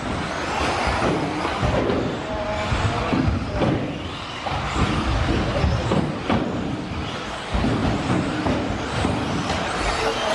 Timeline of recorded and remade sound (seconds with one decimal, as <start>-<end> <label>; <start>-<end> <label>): 0.0-10.3 recorded